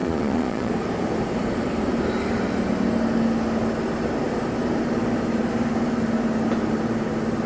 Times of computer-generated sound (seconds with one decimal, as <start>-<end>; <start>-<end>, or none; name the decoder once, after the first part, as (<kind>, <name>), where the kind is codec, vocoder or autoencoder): 0.0-0.7 (vocoder, Vocos)